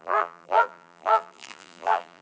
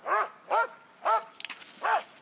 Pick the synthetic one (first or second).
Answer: first